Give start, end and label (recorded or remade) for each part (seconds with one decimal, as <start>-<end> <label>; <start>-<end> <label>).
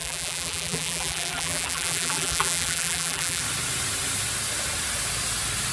0.0-3.4 remade; 3.4-5.7 recorded